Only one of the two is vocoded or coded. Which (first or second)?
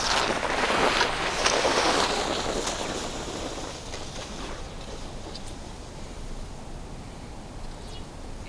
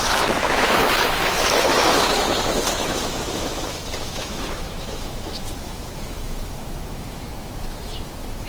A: second